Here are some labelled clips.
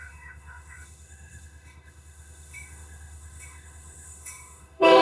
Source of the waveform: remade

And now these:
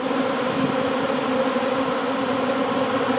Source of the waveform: recorded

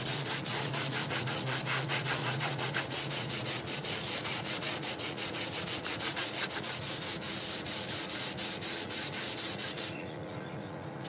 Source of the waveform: remade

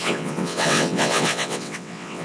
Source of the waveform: remade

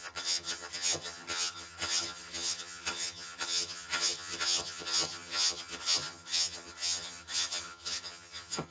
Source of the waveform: remade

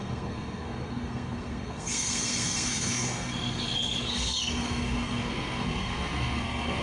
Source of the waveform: remade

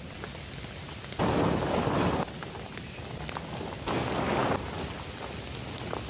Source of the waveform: recorded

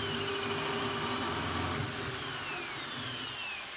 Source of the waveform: recorded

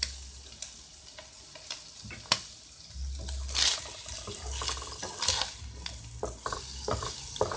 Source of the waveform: recorded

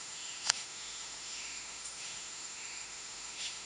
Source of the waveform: remade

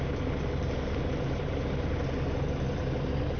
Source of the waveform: recorded